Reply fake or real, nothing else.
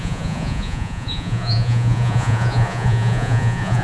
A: fake